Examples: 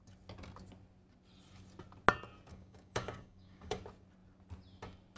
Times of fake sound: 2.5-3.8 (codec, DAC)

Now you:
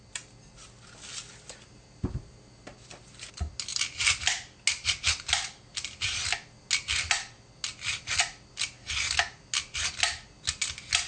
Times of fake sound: none

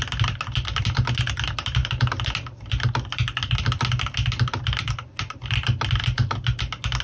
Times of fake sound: none

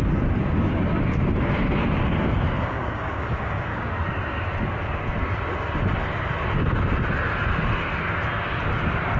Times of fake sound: 2.6-3.9 (codec, DAC)